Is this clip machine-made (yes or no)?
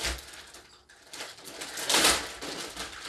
no